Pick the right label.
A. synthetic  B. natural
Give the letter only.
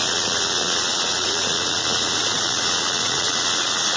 A